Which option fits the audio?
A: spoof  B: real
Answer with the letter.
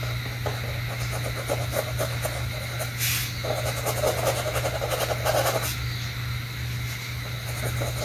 B